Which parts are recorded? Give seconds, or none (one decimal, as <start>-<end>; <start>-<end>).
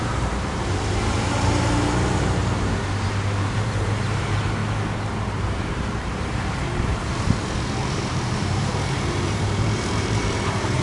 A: 2.4-3.4; 4.6-5.2; 6.9-7.8